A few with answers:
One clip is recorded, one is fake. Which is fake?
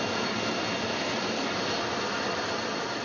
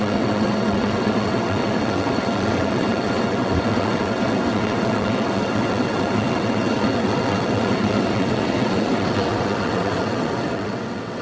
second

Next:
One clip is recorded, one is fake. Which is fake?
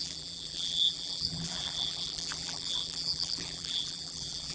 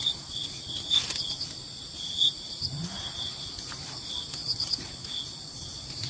first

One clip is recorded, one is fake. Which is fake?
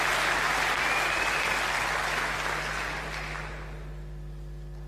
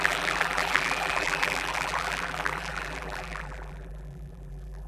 second